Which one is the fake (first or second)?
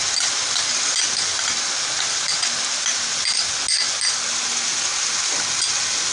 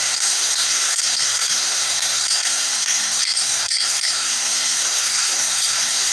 second